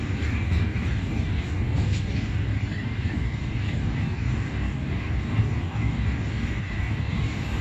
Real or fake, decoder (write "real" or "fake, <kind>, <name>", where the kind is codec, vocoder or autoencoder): fake, codec, DAC